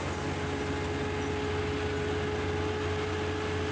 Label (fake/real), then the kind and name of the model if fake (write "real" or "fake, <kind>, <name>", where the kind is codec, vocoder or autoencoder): real